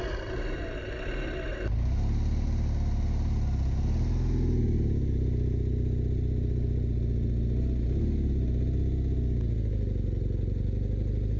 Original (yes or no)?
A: yes